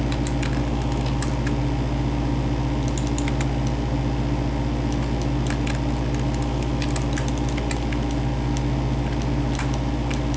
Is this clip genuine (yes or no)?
yes